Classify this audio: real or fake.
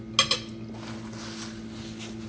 real